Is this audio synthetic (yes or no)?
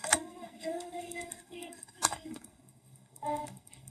yes